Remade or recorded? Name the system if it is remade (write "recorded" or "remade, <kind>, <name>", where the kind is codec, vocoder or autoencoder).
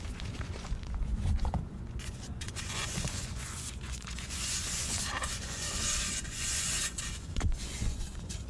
remade, vocoder, Vocos